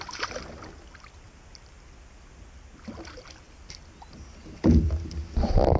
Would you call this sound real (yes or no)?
yes